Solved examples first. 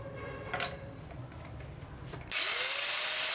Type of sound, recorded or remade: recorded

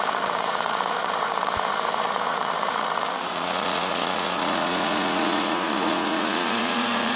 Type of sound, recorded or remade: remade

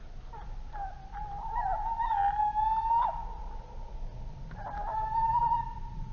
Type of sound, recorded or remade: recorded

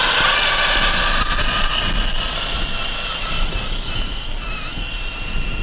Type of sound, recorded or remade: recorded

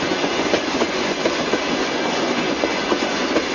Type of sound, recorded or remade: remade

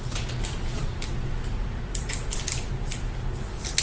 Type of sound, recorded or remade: recorded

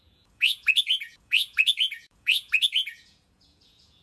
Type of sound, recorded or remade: remade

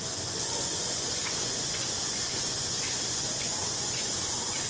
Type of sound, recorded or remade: remade